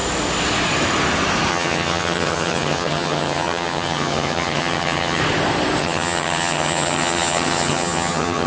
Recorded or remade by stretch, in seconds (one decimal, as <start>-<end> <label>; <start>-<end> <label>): 0.0-1.5 recorded; 1.5-5.2 remade; 5.2-5.8 recorded; 5.8-8.5 remade